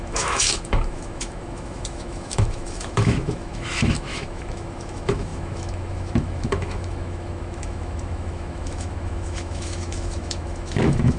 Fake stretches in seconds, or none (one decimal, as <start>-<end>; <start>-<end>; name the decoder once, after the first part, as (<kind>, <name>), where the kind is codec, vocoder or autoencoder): 0.0-11.2 (autoencoder, DAC-VAE)